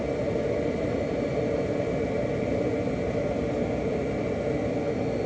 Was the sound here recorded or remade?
recorded